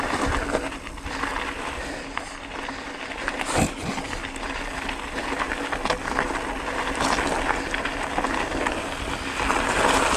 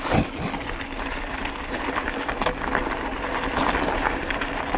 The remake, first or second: second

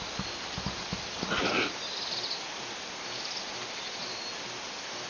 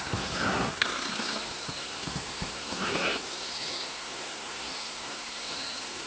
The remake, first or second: second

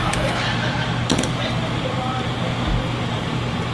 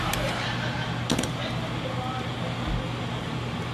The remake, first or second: first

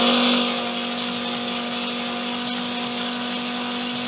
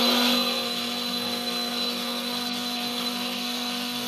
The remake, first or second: second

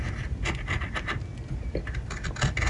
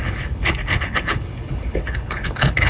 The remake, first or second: second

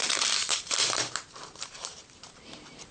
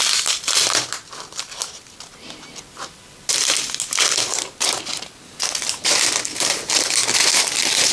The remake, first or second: first